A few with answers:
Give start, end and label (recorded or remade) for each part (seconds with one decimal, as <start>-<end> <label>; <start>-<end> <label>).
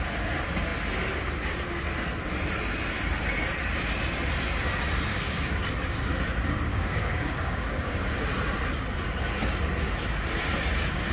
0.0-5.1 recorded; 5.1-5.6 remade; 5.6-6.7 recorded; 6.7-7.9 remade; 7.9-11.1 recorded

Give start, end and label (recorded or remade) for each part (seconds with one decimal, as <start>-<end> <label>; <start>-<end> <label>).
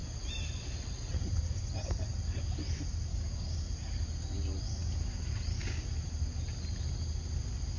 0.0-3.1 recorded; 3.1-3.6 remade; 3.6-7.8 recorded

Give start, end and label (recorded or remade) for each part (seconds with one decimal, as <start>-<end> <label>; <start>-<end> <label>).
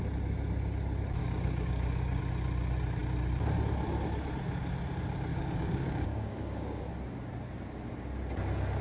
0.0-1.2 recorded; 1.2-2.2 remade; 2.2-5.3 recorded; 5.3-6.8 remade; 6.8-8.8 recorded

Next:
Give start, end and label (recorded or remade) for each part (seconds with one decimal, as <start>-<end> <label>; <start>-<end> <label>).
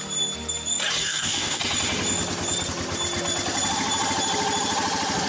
0.0-1.0 recorded; 1.0-1.6 remade; 1.6-5.3 recorded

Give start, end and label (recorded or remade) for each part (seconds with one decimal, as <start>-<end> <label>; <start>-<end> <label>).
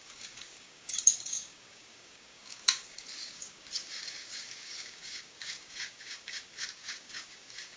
0.0-7.8 remade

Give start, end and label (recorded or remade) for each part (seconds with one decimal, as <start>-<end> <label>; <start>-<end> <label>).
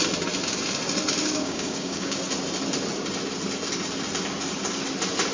0.0-1.2 recorded; 1.2-2.2 remade; 2.2-5.3 recorded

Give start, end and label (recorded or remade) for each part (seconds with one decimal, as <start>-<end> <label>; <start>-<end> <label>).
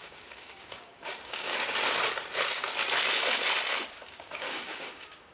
0.0-1.5 remade; 1.5-3.9 recorded; 3.9-5.3 remade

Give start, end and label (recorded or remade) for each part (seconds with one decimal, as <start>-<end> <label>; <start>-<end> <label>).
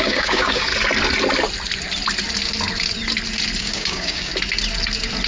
0.0-0.7 remade; 0.7-3.6 recorded; 3.6-4.3 remade; 4.3-5.3 recorded